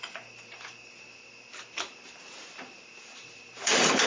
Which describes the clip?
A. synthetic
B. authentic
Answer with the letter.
A